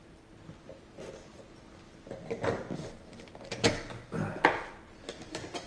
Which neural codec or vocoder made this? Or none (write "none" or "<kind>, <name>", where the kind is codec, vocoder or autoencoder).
none